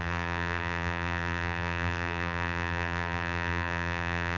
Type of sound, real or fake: fake